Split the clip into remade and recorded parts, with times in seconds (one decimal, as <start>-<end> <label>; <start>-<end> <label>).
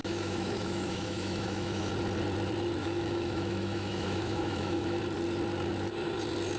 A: 0.0-1.9 remade; 1.9-2.8 recorded; 2.8-5.0 remade; 5.0-6.6 recorded